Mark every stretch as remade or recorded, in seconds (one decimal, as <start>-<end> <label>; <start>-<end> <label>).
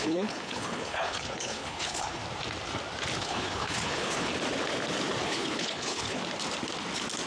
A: 0.0-2.2 remade; 2.2-3.2 recorded; 3.2-4.3 remade; 4.3-5.2 recorded; 5.2-6.2 remade; 6.2-7.3 recorded